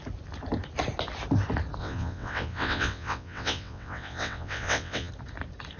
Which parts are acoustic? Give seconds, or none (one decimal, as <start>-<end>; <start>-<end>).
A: 0.0-1.8; 5.1-5.8